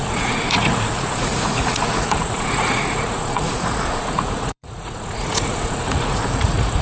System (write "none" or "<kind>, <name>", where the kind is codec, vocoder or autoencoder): vocoder, Vocos